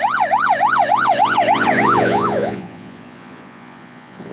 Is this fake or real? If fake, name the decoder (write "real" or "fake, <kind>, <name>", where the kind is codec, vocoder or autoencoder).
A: fake, vocoder, Vocos